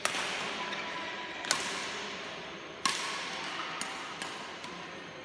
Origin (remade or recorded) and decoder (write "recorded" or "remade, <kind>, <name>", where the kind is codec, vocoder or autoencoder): recorded